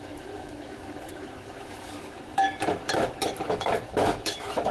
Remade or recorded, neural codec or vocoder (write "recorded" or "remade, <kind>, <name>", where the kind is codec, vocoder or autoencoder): remade, autoencoder, DAC-VAE